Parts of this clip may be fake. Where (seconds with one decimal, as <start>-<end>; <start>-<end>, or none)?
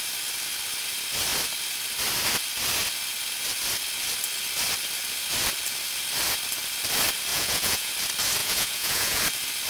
7.3-7.9; 8.4-9.2